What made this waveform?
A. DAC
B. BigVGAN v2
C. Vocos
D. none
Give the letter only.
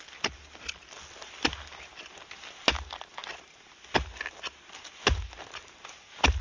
D